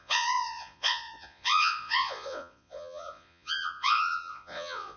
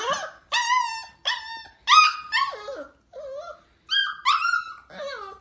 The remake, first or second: first